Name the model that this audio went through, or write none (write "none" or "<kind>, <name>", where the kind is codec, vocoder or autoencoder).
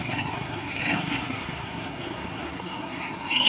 codec, SNAC